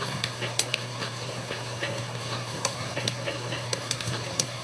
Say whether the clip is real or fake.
fake